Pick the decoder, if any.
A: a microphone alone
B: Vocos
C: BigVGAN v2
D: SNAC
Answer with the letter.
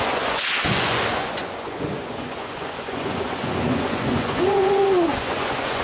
B